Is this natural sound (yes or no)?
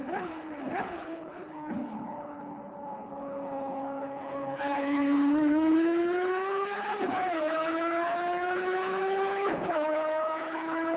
no